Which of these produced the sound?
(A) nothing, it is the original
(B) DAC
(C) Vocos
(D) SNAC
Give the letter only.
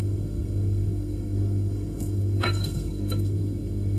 D